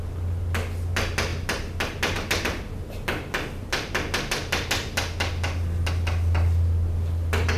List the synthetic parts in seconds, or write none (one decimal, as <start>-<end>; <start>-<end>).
none